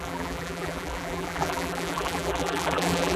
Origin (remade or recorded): remade